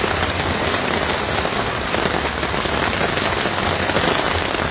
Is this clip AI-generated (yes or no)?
no